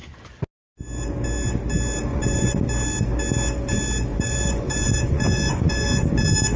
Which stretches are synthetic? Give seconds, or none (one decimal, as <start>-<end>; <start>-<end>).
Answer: 2.1-2.6; 4.1-5.9